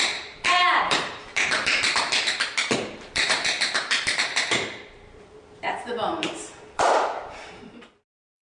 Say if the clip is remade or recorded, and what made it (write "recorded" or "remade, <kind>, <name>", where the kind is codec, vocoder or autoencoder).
remade, vocoder, BigVGAN v2